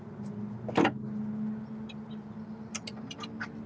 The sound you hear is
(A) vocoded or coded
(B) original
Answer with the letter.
B